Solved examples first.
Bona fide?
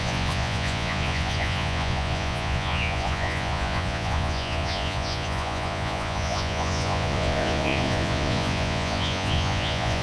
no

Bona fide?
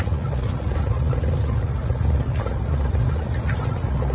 no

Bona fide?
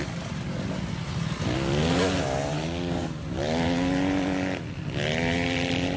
yes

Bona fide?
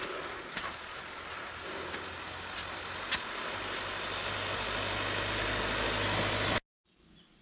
yes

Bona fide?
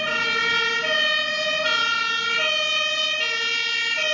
yes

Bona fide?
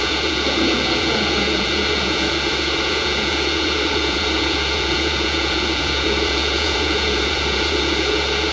no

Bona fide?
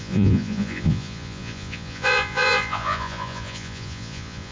no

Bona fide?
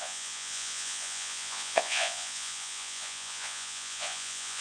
no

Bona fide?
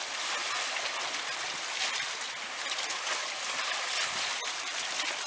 yes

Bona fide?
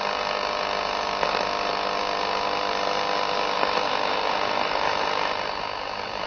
yes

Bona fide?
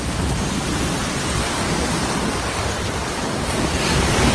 yes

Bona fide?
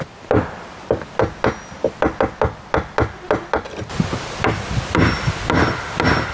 yes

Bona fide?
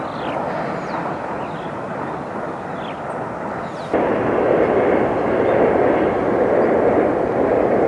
yes